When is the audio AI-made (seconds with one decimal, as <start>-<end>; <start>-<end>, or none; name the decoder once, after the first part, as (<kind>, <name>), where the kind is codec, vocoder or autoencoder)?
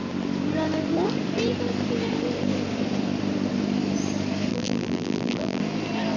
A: 4.5-5.6 (vocoder, BigVGAN v2)